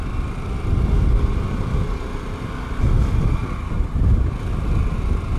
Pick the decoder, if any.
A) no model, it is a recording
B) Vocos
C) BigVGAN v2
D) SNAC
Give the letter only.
A